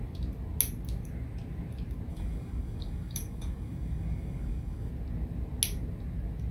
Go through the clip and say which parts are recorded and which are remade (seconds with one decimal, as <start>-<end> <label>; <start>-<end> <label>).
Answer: 0.0-2.1 recorded; 2.1-4.9 remade; 4.9-6.5 recorded